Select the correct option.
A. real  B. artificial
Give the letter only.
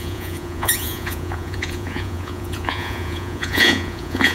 B